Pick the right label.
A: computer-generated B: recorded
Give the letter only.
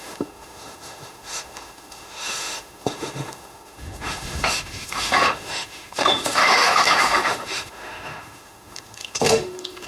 A